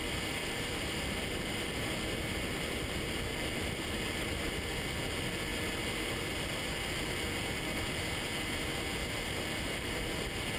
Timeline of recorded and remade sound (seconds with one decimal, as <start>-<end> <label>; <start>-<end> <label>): 0.0-0.4 recorded; 0.4-2.2 remade; 2.2-3.3 recorded; 3.3-4.4 remade; 4.4-9.0 recorded; 9.0-10.0 remade; 10.0-10.6 recorded